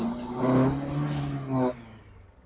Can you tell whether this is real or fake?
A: real